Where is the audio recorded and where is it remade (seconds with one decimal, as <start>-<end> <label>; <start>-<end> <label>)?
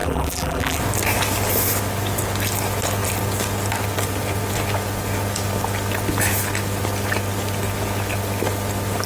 0.0-0.8 remade; 0.8-9.1 recorded